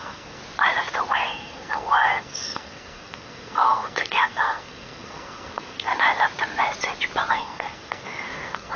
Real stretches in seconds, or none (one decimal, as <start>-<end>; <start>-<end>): 0.4-1.1; 5.9-7.3